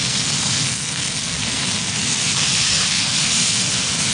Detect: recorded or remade remade